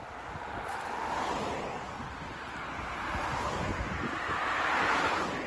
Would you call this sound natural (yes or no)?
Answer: yes